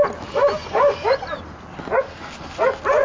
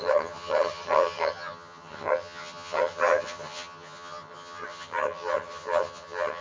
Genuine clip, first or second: first